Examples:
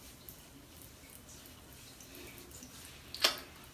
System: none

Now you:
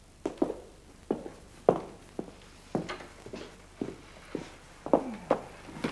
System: none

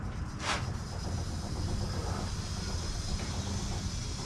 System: none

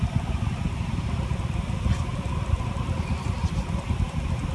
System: none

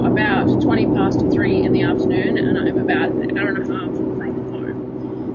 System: none